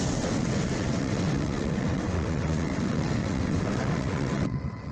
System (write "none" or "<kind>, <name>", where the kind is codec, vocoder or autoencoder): vocoder, WaveNeXt